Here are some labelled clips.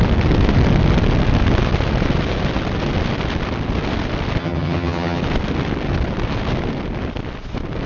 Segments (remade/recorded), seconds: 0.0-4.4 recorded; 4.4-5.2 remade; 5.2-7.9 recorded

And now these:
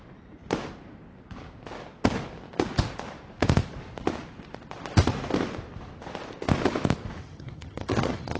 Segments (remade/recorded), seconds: 0.0-7.2 recorded; 7.2-8.4 remade

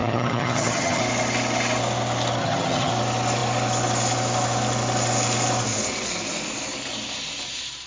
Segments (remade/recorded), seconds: 0.0-1.0 remade; 1.0-2.4 recorded; 2.4-2.9 remade; 2.9-7.9 recorded

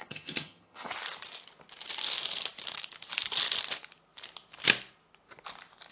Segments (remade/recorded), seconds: 0.0-0.9 remade; 0.9-5.9 recorded

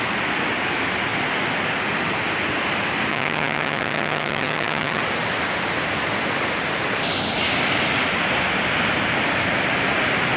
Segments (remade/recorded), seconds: 0.0-3.1 recorded; 3.1-5.0 remade; 5.0-10.4 recorded

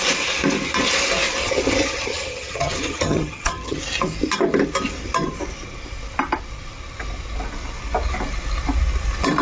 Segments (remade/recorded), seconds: 0.0-1.4 recorded; 1.4-3.8 remade; 3.8-9.4 recorded

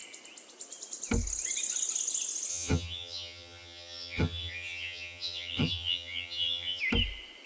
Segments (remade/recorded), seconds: 0.0-2.5 recorded; 2.5-6.8 remade; 6.8-7.5 recorded

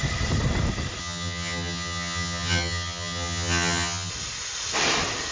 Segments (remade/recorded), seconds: 0.0-1.0 recorded; 1.0-4.1 remade; 4.1-5.3 recorded